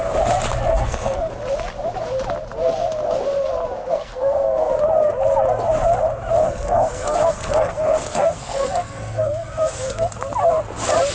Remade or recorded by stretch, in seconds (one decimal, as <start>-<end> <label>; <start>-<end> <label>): 0.0-0.7 recorded; 0.7-1.3 remade; 1.3-3.8 recorded; 3.8-4.7 remade; 4.7-6.4 recorded; 6.4-10.1 remade; 10.1-11.1 recorded